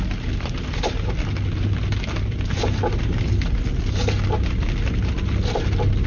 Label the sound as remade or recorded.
recorded